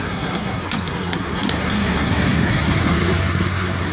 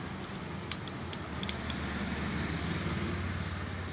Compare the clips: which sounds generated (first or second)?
first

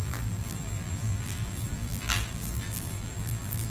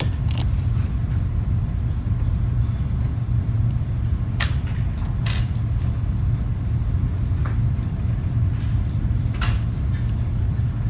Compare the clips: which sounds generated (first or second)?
first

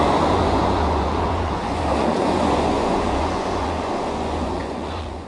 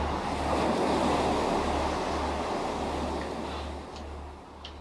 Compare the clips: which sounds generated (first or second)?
first